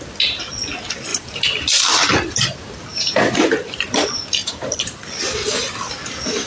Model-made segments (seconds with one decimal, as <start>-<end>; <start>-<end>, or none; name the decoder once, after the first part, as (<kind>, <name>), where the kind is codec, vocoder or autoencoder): 1.1-1.8 (vocoder, BigVGAN v2); 2.9-4.9